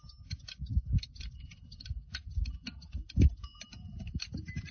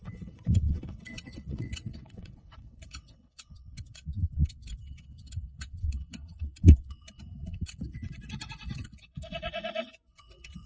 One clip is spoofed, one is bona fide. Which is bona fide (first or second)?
first